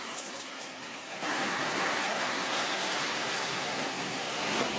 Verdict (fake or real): fake